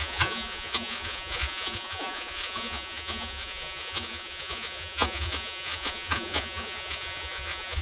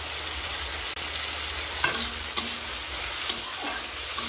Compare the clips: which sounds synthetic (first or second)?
first